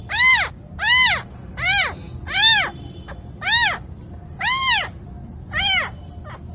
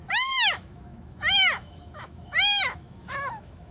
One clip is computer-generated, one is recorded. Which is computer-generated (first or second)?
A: second